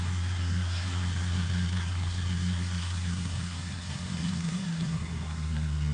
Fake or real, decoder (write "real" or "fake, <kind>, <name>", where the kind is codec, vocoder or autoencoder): fake, codec, SNAC